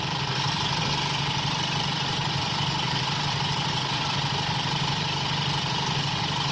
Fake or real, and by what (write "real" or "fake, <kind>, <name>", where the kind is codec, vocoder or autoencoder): fake, vocoder, BigVGAN v2